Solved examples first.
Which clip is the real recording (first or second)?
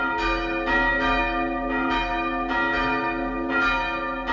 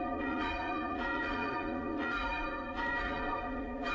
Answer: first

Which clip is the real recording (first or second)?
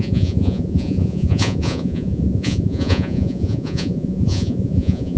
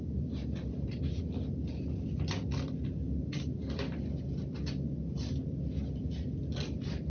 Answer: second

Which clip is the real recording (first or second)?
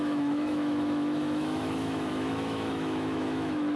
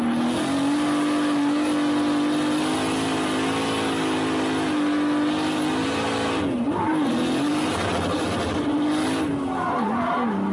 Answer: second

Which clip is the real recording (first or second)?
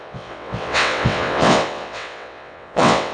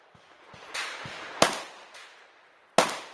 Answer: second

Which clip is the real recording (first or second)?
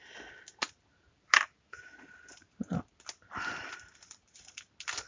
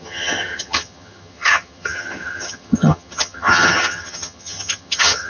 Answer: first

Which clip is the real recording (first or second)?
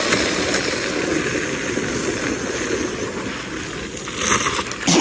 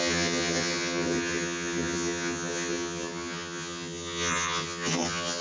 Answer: first